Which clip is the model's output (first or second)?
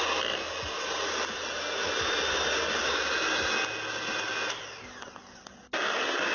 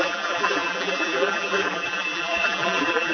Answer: second